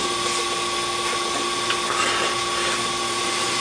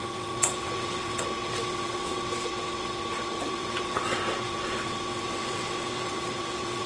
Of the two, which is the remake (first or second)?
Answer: second